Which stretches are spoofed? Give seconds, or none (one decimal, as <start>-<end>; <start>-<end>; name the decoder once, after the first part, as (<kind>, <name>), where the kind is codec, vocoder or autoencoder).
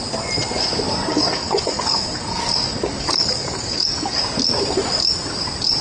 1.1-4.2 (codec, DAC)